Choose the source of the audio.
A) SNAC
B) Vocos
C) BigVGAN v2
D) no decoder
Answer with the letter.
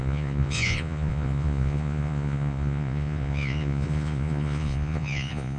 B